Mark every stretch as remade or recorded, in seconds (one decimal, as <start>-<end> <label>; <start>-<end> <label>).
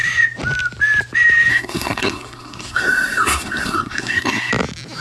0.0-1.5 recorded; 1.5-4.5 remade; 4.5-5.0 recorded